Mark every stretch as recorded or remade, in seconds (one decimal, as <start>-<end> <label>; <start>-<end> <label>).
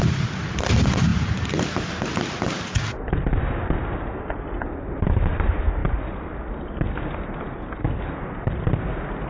0.0-5.8 recorded; 5.8-6.4 remade; 6.4-9.3 recorded